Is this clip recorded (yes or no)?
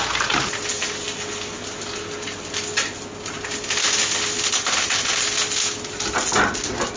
yes